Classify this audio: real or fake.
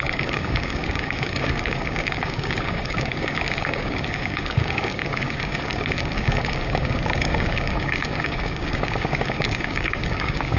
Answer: fake